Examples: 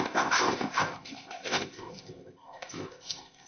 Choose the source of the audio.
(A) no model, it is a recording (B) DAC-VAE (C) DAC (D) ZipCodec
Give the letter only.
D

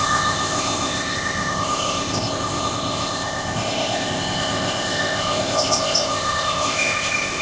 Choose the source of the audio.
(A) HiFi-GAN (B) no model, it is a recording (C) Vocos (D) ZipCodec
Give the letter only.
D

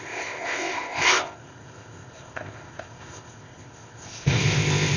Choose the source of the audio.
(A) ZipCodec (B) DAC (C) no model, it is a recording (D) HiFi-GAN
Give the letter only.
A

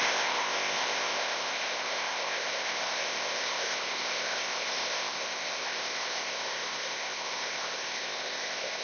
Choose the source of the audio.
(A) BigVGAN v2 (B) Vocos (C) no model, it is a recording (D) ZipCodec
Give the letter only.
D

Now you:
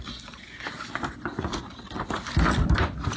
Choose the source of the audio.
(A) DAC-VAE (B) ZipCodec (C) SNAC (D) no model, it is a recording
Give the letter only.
D